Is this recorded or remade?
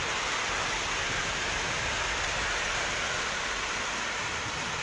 remade